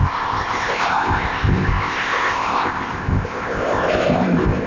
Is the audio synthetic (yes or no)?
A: yes